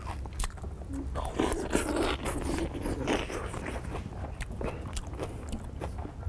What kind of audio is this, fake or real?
real